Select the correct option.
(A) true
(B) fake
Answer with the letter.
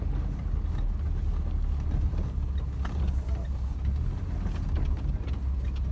A